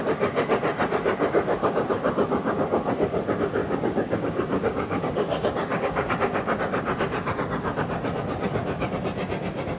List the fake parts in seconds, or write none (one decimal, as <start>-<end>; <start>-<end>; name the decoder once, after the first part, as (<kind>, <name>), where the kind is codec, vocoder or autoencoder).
3.6-6.1 (codec, DAC)